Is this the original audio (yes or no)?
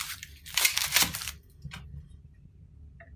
yes